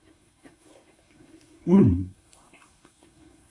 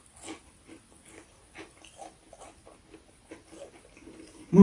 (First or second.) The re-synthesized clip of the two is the first